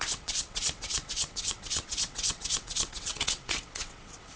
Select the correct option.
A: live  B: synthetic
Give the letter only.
B